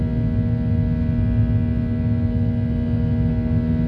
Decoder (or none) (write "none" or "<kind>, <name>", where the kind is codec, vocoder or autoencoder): none